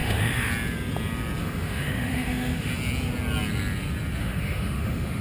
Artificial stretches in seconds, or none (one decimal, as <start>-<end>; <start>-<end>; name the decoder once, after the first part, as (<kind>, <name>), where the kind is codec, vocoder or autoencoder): 0.0-0.5 (autoencoder, DAC-VAE); 1.4-2.7; 4.2-5.2